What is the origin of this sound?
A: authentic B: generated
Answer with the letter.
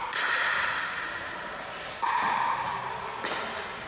A